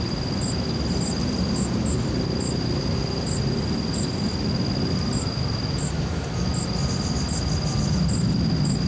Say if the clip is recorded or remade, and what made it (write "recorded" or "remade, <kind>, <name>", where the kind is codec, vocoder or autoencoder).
recorded